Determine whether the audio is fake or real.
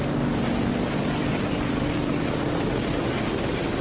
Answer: real